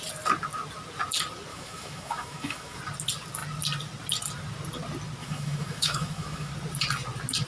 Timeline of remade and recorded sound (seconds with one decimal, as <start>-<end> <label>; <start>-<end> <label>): 0.0-1.5 recorded; 1.5-2.8 remade; 2.8-5.2 recorded; 5.2-6.5 remade; 6.5-7.5 recorded